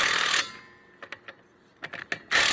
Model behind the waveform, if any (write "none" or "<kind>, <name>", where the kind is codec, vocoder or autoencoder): none